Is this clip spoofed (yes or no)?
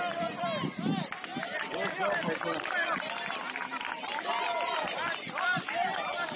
no